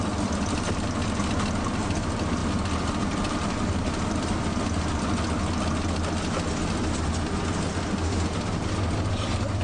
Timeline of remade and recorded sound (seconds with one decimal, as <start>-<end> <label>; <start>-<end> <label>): 0.0-9.6 recorded

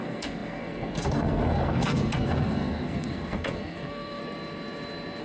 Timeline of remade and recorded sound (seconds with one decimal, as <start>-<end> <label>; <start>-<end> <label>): 0.0-4.2 remade; 4.2-5.2 recorded

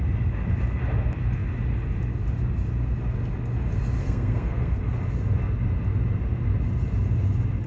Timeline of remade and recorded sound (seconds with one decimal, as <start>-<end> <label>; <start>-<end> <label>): 0.0-4.0 recorded; 4.0-4.9 remade; 4.9-7.7 recorded

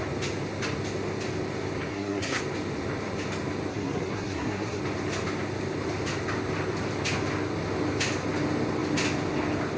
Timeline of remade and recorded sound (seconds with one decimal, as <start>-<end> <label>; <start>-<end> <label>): 0.0-1.9 recorded; 1.9-2.4 remade; 2.4-3.7 recorded; 3.7-4.8 remade; 4.8-9.8 recorded

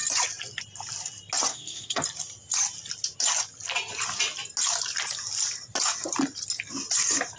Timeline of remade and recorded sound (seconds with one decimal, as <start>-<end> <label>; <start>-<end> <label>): 0.0-1.5 recorded; 1.5-2.0 remade; 2.0-7.4 recorded

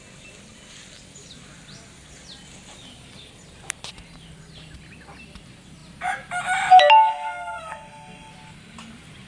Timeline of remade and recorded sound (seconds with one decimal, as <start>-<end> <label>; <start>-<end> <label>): 0.0-7.1 recorded; 7.1-8.3 remade; 8.3-9.3 recorded